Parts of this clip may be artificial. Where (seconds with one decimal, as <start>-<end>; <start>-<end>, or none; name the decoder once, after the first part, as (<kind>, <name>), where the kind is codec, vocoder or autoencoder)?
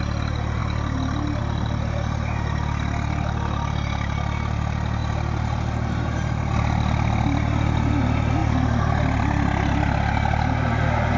none